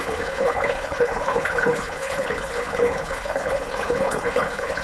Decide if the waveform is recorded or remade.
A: remade